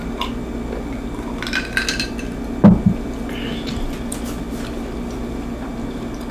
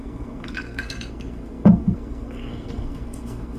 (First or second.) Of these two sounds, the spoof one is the second